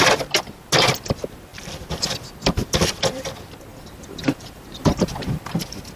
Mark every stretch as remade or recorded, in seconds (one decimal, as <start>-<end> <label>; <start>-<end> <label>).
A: 0.0-1.5 recorded; 1.5-3.3 remade; 3.3-3.7 recorded; 3.7-5.6 remade; 5.6-6.0 recorded

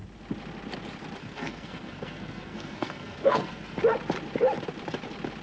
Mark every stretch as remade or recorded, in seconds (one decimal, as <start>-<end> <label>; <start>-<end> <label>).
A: 0.0-1.2 recorded; 1.2-3.8 remade; 3.8-5.4 recorded